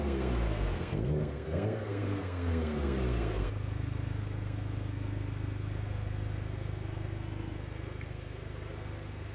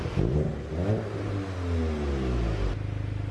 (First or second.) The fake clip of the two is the first